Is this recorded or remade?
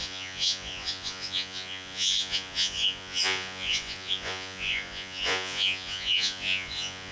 remade